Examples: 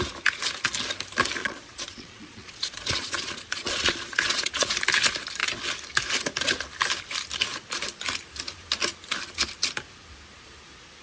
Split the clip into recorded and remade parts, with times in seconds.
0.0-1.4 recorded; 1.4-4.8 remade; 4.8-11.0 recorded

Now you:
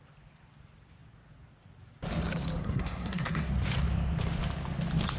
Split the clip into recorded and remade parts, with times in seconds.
0.0-2.6 recorded; 2.6-3.5 remade; 3.5-5.2 recorded

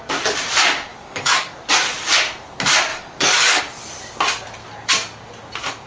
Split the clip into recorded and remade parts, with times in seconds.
0.0-0.9 recorded; 0.9-1.6 remade; 1.6-2.9 recorded; 2.9-3.6 remade; 3.6-5.9 recorded

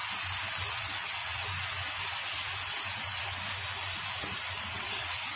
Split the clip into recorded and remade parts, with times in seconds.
0.0-0.7 recorded; 0.7-1.5 remade; 1.5-4.7 recorded; 4.7-5.4 remade

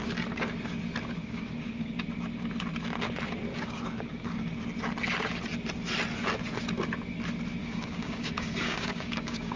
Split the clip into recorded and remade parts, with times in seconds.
0.0-1.2 recorded; 1.2-1.9 remade; 1.9-3.5 recorded; 3.5-4.5 remade; 4.5-7.6 recorded; 7.6-9.6 remade

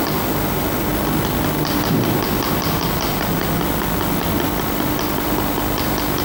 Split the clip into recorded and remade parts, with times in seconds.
0.0-6.2 recorded